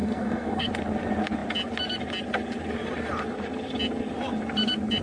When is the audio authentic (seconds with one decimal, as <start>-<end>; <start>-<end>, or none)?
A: 0.7-5.0